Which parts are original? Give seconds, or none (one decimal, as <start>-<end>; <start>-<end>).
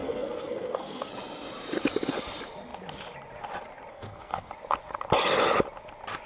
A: 1.1-3.9; 4.5-6.3